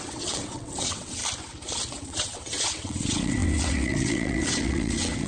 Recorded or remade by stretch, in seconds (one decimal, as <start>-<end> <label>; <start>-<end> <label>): 0.0-1.2 remade; 1.2-1.9 recorded; 1.9-5.3 remade